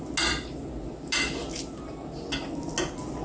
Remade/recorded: recorded